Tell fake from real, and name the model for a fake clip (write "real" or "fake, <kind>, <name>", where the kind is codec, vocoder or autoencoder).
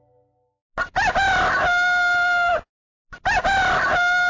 real